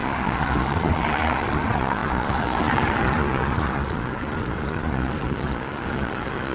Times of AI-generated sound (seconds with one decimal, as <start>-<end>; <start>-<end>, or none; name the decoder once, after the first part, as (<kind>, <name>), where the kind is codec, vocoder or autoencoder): 0.0-6.5 (vocoder, Vocos)